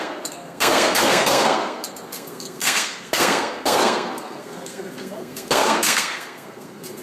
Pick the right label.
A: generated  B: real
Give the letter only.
A